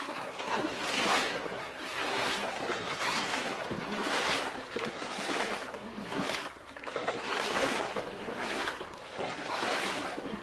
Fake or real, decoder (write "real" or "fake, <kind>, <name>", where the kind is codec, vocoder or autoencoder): fake, codec, SNAC